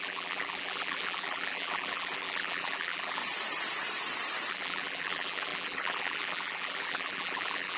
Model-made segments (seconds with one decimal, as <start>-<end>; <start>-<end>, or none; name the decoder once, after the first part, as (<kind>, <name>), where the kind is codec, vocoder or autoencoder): 0.0-3.2 (vocoder, BigVGAN v2); 4.5-7.8